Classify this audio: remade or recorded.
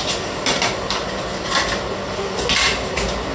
recorded